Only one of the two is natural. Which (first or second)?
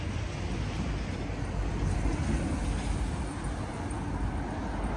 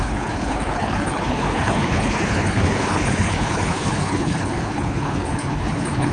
first